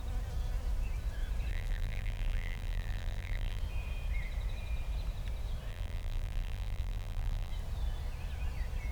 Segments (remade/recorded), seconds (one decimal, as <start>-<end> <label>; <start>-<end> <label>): 0.0-1.5 recorded; 1.5-3.6 remade; 3.6-5.7 recorded; 5.7-7.5 remade; 7.5-8.9 recorded